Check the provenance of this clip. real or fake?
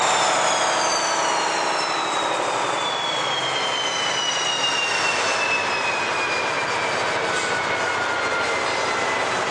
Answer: real